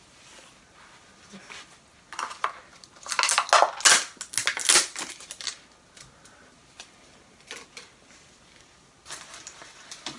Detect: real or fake real